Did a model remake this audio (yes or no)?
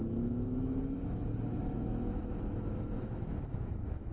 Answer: yes